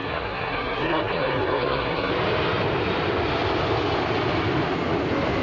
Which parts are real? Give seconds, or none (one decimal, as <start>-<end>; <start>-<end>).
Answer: 2.1-5.4